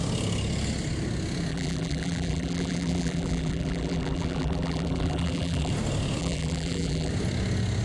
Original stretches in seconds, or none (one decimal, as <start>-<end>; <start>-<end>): 0.0-1.5; 5.7-6.2; 7.1-7.8